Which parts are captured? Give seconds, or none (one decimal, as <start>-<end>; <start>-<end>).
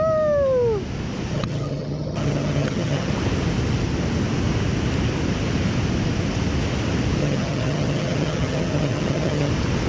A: 0.0-1.3; 3.1-7.2; 9.5-9.9